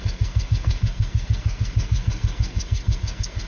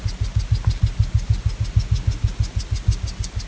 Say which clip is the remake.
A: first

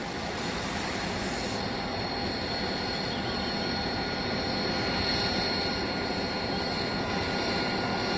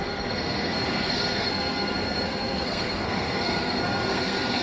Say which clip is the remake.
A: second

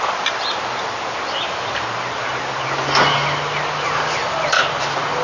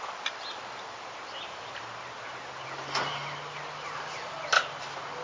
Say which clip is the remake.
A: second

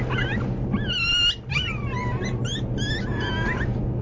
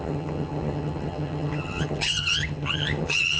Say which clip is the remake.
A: second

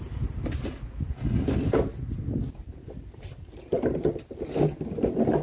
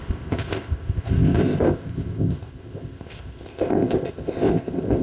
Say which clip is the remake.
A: second